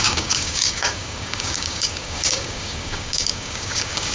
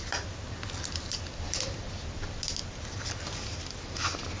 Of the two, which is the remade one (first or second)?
first